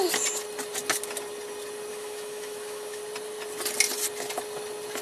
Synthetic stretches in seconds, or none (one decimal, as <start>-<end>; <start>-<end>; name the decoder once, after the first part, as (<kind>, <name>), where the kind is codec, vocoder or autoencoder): 1.9-3.0 (autoencoder, DAC-VAE)